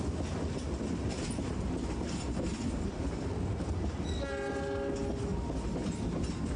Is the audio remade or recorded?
recorded